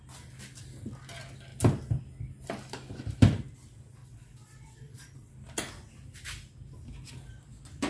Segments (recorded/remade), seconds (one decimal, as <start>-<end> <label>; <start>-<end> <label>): 0.0-4.0 recorded; 4.0-5.3 remade; 5.3-7.9 recorded